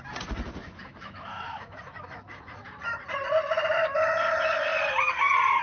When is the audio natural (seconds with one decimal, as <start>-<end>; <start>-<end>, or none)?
0.0-0.6; 2.8-5.6